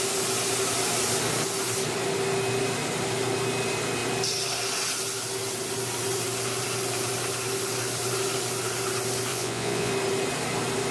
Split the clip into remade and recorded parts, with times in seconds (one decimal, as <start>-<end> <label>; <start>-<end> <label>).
0.0-9.3 recorded; 9.3-9.9 remade; 9.9-10.9 recorded